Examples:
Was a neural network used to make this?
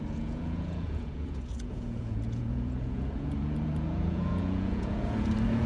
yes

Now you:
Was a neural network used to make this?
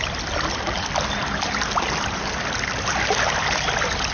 no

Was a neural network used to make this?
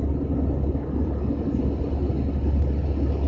no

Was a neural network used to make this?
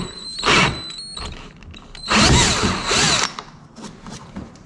no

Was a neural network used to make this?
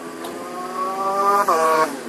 yes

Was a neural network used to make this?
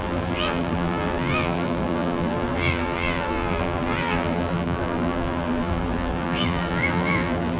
yes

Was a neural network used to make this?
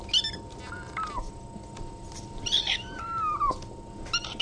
no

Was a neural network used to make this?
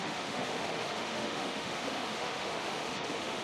yes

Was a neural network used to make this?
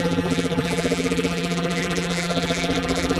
yes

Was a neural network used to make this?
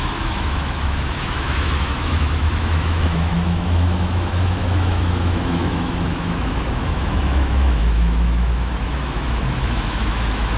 yes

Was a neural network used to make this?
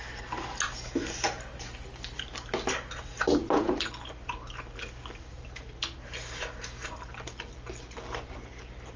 no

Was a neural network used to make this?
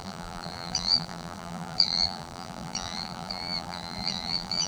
yes